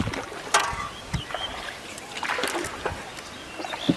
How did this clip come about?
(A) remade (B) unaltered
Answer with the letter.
B